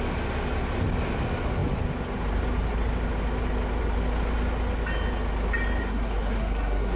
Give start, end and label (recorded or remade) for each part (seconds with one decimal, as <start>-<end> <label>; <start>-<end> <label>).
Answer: 0.0-5.8 recorded; 5.8-7.0 remade